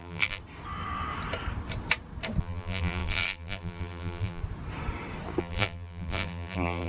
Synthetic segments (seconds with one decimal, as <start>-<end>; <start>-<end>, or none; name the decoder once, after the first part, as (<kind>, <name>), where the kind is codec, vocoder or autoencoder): 0.0-0.4 (vocoder, BigVGAN v2); 2.4-4.4; 5.4-6.9